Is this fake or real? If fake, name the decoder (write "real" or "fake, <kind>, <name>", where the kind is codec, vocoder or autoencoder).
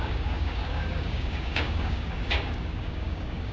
fake, codec, DAC